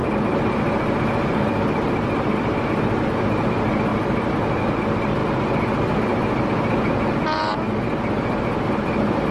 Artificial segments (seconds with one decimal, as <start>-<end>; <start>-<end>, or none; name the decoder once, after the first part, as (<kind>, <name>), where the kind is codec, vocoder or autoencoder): none